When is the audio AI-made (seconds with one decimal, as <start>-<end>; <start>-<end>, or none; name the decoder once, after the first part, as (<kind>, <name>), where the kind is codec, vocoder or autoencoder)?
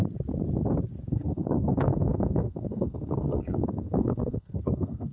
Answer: 1.1-5.1 (codec, SNAC)